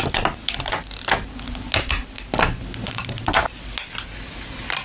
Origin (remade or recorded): recorded